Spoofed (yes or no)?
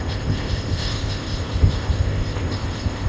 yes